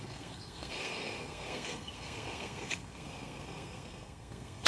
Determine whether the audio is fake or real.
fake